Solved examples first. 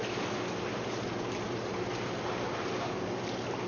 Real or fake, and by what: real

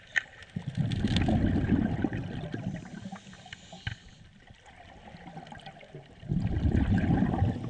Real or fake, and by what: real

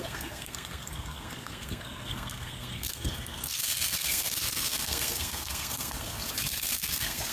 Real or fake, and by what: fake, codec, SNAC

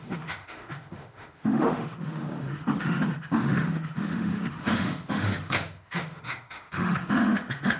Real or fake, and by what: fake, autoencoder, DAC-VAE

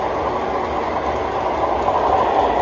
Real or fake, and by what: real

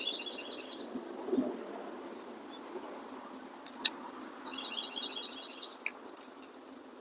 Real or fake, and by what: real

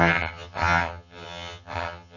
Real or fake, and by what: fake, vocoder, HiFi-GAN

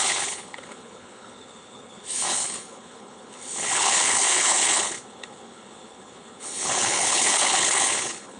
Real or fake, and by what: fake, codec, HILCodec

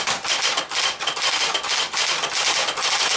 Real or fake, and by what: real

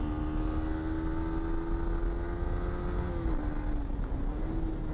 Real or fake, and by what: real